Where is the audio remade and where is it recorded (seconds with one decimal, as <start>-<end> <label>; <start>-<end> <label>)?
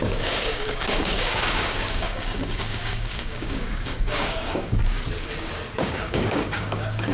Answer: 0.0-4.8 remade; 4.8-5.8 recorded; 5.8-7.1 remade